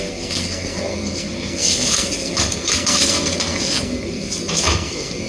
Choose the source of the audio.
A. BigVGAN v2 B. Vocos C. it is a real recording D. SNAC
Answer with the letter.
D